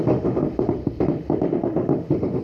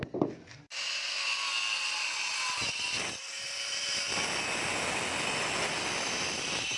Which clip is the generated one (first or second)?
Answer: first